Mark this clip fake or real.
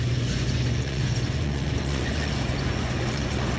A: fake